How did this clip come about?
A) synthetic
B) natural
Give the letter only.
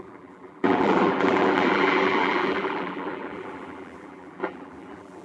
A